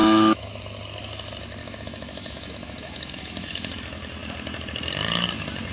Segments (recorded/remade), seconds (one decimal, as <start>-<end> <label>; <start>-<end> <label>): 0.0-0.6 remade; 0.6-1.6 recorded; 1.6-3.8 remade; 3.8-5.7 recorded

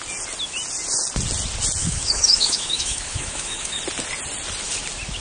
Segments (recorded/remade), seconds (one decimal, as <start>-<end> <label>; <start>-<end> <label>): 0.0-1.8 recorded; 1.8-3.8 remade; 3.8-5.2 recorded

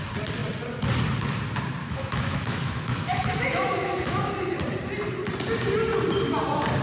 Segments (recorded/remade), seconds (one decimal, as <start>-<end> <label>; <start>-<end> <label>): 0.0-1.8 recorded; 1.8-4.3 remade; 4.3-6.8 recorded

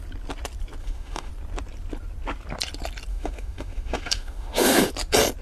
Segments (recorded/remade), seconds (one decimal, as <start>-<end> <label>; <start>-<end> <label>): 0.0-0.8 recorded; 0.8-1.3 remade; 1.3-3.1 recorded; 3.1-4.9 remade; 4.9-5.4 recorded

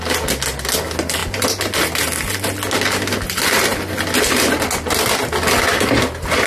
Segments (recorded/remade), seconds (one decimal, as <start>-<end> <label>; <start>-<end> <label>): 0.0-6.5 recorded

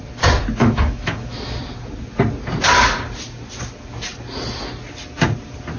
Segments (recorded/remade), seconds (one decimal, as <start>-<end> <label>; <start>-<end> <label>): 0.0-0.6 recorded; 0.6-1.6 remade; 1.6-5.8 recorded